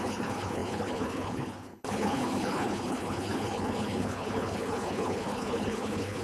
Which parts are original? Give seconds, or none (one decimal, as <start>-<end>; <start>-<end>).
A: none

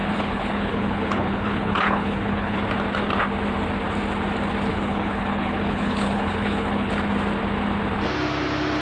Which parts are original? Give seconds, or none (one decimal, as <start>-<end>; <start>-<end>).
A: 2.6-4.7; 6.9-8.8

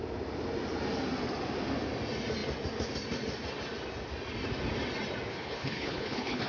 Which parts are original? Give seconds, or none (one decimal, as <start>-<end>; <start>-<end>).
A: 0.0-5.3

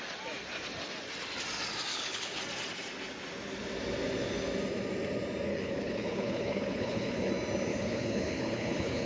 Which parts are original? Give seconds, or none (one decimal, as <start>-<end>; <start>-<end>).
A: 0.0-1.9; 2.4-5.5; 7.3-7.7

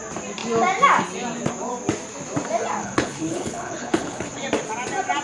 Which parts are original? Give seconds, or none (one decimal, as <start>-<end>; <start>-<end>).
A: 0.0-2.8; 4.4-5.2

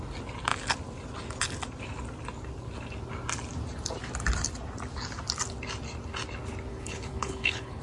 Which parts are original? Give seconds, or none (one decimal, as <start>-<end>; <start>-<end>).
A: 0.0-6.7

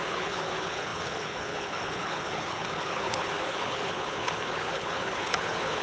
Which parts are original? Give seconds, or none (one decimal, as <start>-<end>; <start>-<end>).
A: none